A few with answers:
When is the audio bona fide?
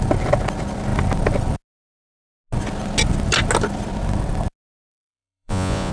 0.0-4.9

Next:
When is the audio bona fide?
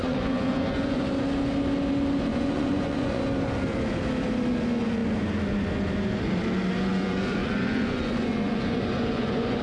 1.1-2.3; 3.2-6.9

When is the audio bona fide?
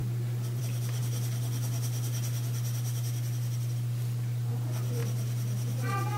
0.0-6.2